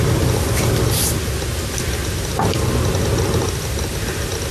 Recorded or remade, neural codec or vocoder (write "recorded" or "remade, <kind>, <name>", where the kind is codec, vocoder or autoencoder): recorded